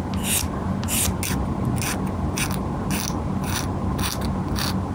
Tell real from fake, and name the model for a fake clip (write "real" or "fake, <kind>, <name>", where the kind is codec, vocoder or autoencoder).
real